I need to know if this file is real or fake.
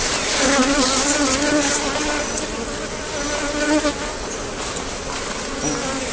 real